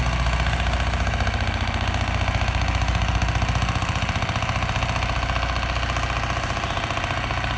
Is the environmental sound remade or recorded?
recorded